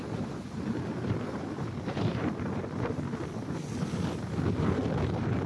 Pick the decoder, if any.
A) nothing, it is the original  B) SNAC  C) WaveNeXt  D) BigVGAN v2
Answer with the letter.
D